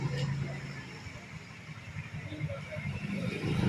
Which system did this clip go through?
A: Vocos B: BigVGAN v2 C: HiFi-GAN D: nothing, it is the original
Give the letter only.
D